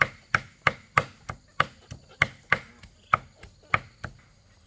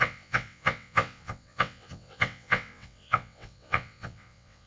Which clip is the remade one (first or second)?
second